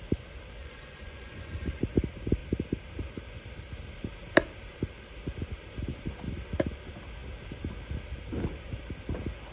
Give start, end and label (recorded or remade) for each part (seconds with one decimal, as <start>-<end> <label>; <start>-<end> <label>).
0.0-0.6 recorded; 0.6-1.8 remade; 1.8-9.5 recorded